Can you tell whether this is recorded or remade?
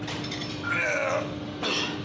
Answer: recorded